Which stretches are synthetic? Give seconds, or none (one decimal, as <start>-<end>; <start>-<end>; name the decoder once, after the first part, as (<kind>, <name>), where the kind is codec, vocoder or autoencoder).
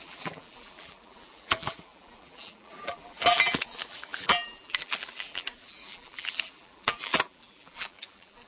0.0-8.5 (vocoder, BigVGAN v2)